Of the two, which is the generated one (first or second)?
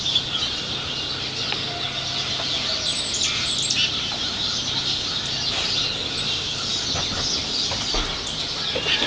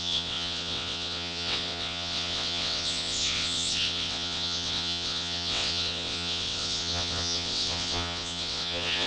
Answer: second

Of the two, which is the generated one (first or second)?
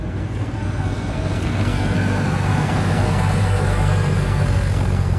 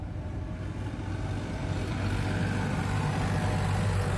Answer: first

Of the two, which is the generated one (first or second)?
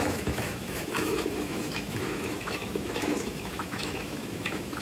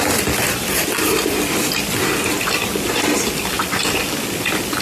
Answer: first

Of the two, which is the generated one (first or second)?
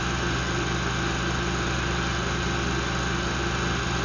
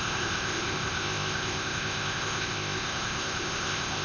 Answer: second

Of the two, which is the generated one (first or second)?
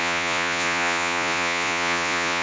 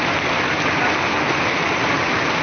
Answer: first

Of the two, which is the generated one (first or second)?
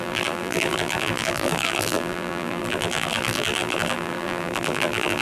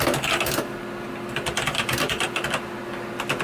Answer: first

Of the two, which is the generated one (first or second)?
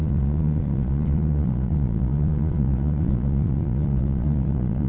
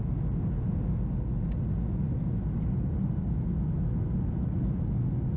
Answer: first